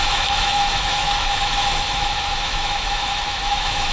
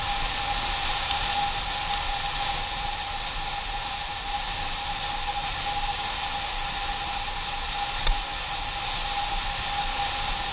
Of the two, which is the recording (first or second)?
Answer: second